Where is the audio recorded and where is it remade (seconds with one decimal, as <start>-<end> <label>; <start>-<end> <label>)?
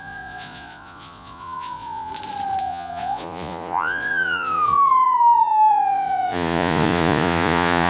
0.0-2.1 remade; 2.1-2.6 recorded; 2.6-7.9 remade